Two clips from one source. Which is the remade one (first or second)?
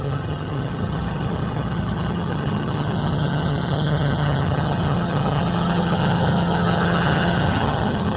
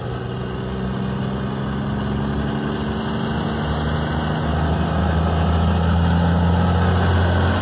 first